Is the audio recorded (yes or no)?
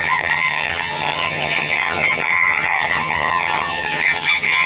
no